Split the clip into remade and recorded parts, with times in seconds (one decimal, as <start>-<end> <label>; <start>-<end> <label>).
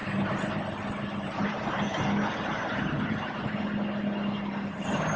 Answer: 0.0-5.2 recorded